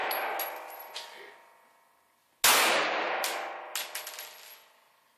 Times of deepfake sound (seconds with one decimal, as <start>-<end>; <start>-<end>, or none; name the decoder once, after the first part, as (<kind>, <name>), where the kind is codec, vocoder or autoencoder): none